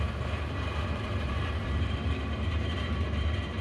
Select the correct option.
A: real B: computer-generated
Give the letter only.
B